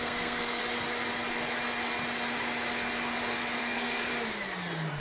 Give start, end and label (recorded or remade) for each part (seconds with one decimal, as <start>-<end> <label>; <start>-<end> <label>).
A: 0.0-0.6 remade; 0.6-3.6 recorded; 3.6-4.1 remade; 4.1-5.0 recorded